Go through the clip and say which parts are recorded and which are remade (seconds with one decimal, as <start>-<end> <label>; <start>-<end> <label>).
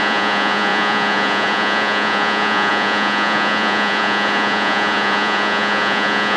0.0-6.4 remade